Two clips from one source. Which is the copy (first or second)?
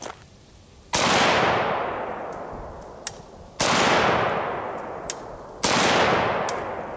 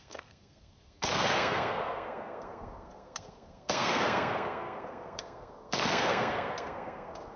second